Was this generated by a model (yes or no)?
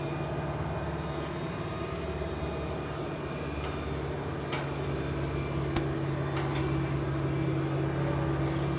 no